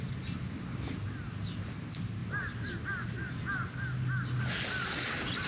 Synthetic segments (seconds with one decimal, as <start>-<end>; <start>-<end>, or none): none